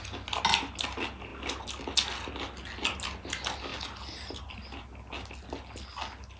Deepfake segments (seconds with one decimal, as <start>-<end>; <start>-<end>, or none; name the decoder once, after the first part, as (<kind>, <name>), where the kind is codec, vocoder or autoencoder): none